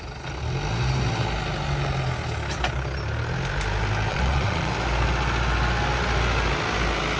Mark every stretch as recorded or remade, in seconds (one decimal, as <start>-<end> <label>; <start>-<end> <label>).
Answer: 0.0-4.1 recorded; 4.1-4.7 remade; 4.7-7.2 recorded